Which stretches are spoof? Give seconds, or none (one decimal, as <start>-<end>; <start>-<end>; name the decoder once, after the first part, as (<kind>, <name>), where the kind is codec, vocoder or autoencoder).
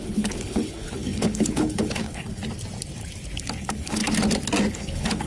0.0-2.4 (codec, HILCodec); 3.6-4.0; 4.7-5.3